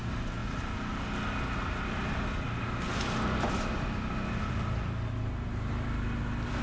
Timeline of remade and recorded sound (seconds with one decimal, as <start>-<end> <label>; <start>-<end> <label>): 0.0-6.6 recorded